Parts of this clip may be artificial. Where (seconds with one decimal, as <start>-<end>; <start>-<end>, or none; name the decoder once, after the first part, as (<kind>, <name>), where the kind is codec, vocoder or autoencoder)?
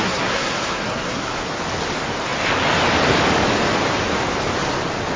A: 0.0-1.4 (codec, SNAC)